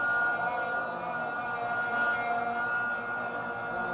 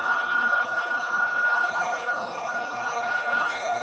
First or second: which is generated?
second